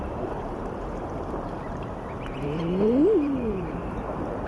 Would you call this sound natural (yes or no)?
no